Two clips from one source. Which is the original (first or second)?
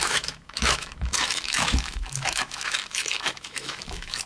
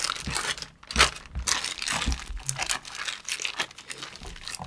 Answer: second